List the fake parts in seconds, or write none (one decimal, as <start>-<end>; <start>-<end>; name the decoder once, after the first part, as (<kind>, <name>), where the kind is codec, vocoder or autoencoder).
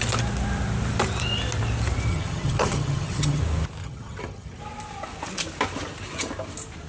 2.1-3.4 (vocoder, HiFi-GAN); 3.8-4.6